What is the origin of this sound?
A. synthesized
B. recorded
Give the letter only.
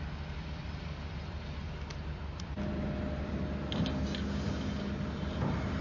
B